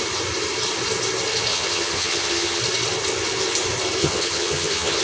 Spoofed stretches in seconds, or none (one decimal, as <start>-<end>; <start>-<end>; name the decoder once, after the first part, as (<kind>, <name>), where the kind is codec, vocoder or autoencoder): 1.5-2.6 (vocoder, HiFi-GAN); 4.0-5.0

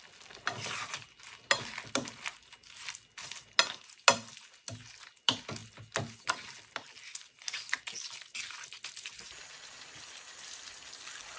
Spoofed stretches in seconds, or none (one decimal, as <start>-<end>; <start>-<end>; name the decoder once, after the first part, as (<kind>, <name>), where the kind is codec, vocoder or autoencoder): none